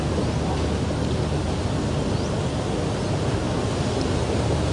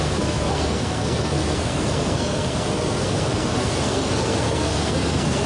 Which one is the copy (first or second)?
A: second